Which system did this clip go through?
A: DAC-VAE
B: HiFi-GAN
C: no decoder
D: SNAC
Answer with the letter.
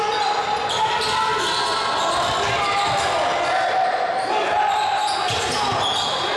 C